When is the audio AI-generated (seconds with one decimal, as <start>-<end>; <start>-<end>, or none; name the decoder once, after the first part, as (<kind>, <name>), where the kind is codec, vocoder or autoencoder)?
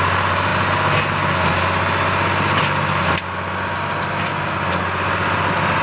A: none